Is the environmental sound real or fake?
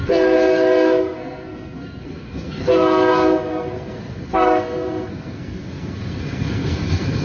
fake